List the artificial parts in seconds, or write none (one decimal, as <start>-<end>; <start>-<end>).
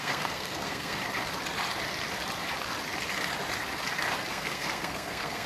0.0-1.0; 4.3-5.5